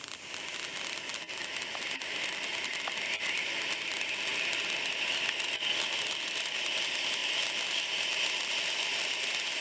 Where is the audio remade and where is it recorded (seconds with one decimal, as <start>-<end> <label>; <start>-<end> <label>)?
0.0-9.6 recorded